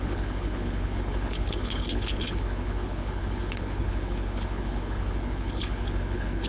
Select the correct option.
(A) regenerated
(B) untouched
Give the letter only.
A